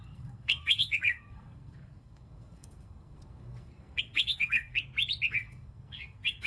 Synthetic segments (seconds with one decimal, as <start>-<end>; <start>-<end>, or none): 0.0-4.8; 5.3-6.5